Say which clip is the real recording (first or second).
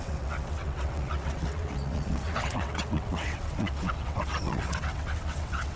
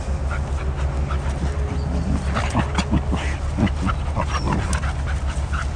second